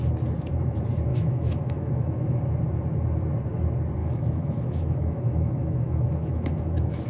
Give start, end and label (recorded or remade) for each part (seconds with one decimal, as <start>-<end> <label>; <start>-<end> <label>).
0.0-1.1 recorded; 1.1-2.4 remade; 2.4-4.0 recorded; 4.0-7.1 remade